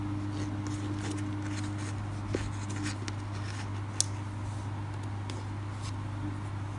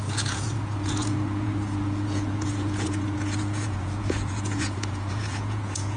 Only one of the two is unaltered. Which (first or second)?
first